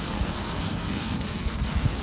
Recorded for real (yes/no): no